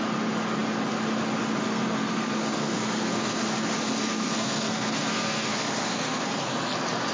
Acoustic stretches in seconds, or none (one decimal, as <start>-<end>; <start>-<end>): 0.0-1.6; 3.4-3.9; 6.4-7.1